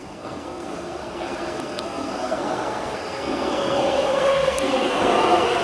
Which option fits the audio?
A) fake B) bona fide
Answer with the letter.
A